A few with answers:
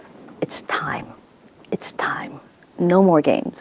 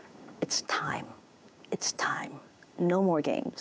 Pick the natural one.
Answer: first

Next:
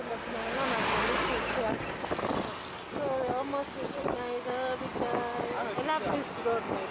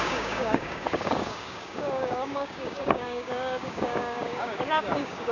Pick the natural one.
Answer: first